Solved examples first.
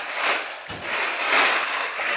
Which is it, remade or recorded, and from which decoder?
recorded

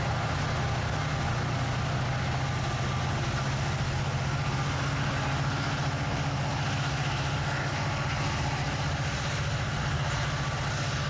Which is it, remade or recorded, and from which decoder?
recorded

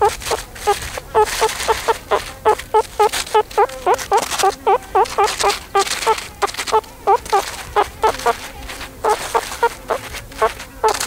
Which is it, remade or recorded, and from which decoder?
recorded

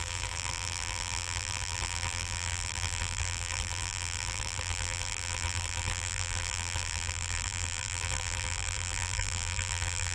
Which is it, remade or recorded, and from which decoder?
remade, vocoder, BigVGAN v2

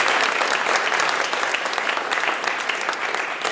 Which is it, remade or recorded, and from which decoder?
recorded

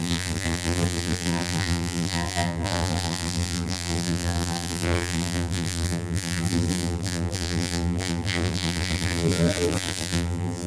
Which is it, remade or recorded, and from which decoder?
remade, vocoder, BigVGAN v2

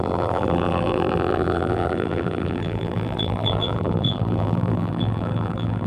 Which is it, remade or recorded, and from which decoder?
remade, vocoder, BigVGAN v2